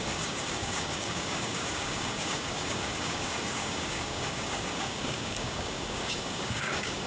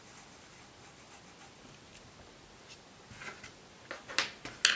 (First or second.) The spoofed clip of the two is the first